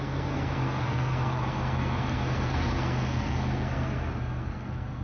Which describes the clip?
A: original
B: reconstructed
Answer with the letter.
B